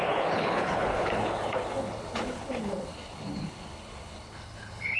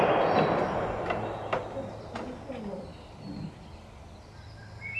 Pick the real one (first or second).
second